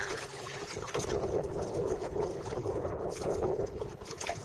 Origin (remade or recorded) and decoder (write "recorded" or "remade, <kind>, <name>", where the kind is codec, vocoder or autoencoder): remade, codec, HILCodec